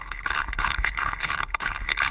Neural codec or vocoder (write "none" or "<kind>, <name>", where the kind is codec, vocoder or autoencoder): codec, HILCodec